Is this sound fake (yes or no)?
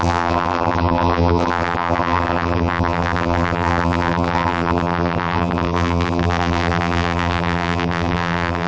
yes